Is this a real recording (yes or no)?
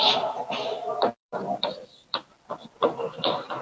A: no